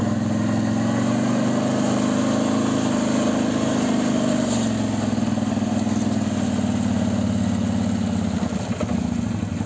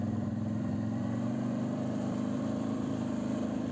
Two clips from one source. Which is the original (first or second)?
first